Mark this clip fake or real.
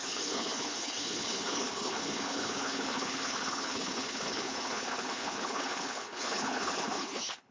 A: fake